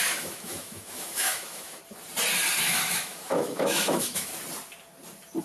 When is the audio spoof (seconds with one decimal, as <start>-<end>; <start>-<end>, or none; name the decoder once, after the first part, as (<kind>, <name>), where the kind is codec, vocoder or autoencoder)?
0.0-1.8 (autoencoder, DAC-VAE); 2.6-4.3